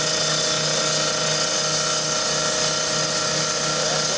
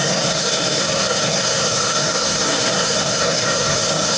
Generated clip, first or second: second